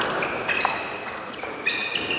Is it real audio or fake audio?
real